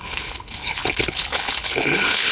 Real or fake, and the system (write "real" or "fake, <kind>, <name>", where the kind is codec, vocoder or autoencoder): fake, codec, HILCodec